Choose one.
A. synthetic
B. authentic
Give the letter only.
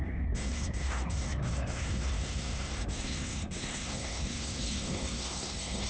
A